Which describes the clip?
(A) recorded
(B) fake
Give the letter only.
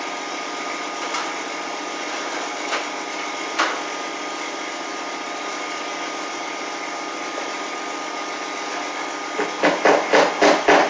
A